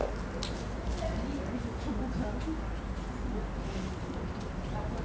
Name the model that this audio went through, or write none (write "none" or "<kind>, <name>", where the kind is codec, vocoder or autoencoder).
none